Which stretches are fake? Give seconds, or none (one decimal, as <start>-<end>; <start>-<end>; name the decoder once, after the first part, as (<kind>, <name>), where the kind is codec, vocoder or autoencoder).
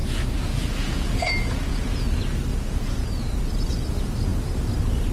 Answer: 0.0-1.9 (vocoder, Vocos); 2.5-3.5